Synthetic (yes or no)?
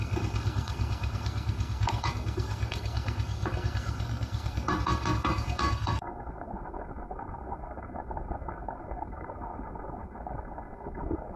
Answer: yes